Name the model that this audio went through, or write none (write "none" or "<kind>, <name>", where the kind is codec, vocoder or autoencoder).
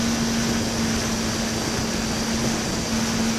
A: none